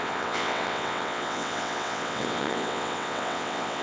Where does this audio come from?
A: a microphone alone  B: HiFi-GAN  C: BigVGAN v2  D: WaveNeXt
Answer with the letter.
D